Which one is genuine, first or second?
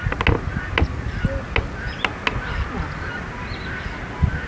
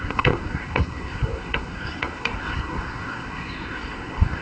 first